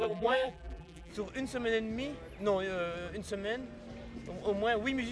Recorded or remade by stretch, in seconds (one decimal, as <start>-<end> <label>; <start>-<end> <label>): 0.0-1.1 remade; 1.1-5.1 recorded